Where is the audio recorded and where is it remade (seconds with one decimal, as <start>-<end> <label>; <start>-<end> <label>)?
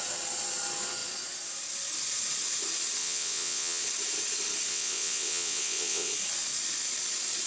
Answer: 0.0-3.0 recorded; 3.0-3.8 remade; 3.8-4.7 recorded; 4.7-6.1 remade; 6.1-7.5 recorded